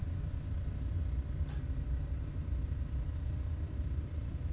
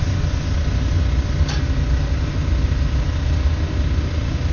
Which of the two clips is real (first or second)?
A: second